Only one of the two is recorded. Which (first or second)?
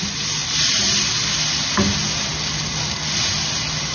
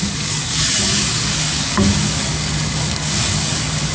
first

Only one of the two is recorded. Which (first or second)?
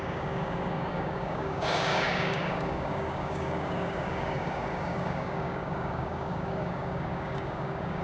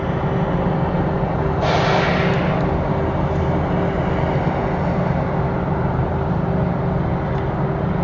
second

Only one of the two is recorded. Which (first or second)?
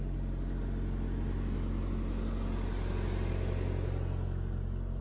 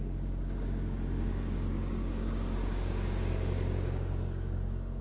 first